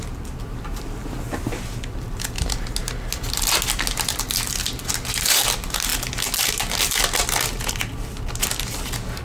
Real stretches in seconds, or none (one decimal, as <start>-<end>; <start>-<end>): 0.0-9.2